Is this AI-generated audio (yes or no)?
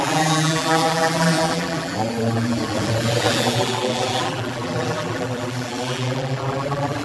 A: yes